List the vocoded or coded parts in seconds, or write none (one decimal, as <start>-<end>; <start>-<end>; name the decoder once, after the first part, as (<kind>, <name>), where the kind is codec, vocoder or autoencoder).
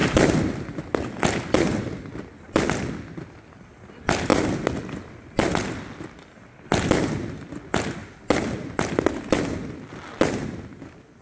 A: none